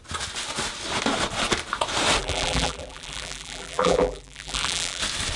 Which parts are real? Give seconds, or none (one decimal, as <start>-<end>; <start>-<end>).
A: 0.0-2.2; 5.0-5.4